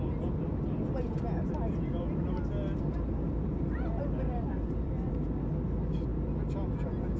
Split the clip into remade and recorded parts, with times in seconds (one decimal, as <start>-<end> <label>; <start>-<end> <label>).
0.0-1.4 recorded; 1.4-5.1 remade; 5.1-7.2 recorded